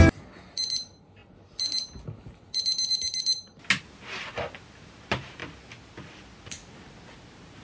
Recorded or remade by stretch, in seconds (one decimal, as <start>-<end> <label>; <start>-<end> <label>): 0.0-7.6 recorded